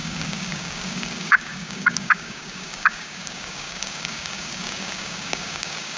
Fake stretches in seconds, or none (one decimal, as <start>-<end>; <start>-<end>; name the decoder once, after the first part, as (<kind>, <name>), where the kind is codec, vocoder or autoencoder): 0.0-6.0 (codec, DAC)